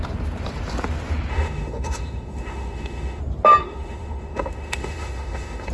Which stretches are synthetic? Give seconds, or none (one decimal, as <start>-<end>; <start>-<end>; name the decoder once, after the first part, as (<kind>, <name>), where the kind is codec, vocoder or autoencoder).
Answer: 1.3-3.2 (autoencoder, DAC-VAE); 3.6-5.7